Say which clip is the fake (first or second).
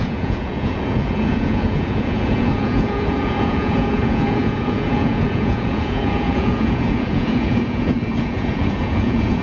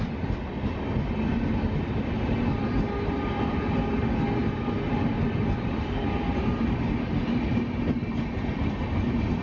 first